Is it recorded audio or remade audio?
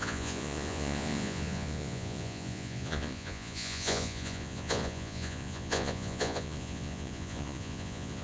remade